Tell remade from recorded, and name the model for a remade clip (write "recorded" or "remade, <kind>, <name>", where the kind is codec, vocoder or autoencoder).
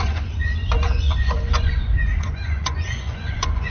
remade, vocoder, Vocos